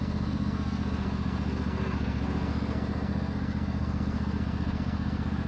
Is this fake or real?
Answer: fake